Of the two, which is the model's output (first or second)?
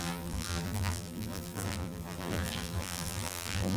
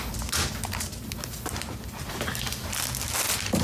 first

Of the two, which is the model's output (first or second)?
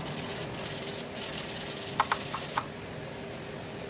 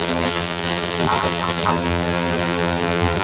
second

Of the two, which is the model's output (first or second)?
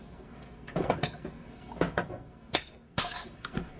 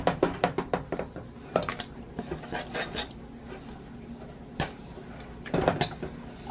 first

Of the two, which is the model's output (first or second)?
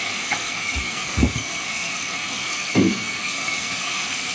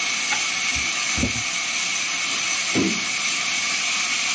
first